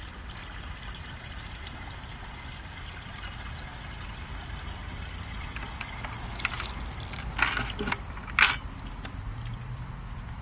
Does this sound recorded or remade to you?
recorded